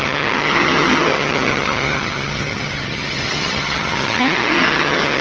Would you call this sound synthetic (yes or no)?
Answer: yes